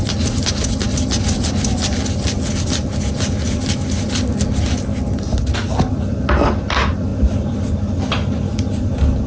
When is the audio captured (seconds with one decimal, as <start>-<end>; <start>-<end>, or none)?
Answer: 0.0-9.3